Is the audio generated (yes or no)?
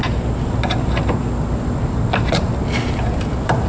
no